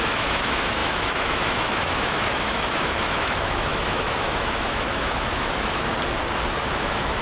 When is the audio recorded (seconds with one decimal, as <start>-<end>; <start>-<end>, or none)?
5.9-6.6